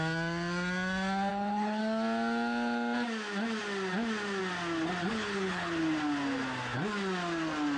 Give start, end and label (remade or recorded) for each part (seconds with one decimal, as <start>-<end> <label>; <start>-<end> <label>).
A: 0.0-1.3 recorded; 1.3-1.8 remade; 1.8-5.1 recorded; 5.1-5.8 remade; 5.8-7.8 recorded